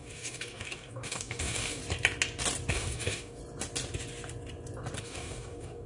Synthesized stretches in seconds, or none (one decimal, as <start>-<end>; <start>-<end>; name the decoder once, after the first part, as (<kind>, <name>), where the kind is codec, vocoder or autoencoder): 0.0-1.8 (codec, DAC); 2.7-3.4; 5.0-5.9